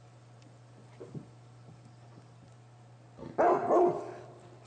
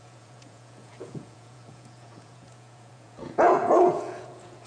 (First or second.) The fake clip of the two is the second